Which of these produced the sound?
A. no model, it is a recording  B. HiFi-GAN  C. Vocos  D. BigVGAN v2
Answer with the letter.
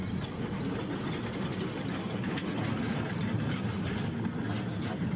A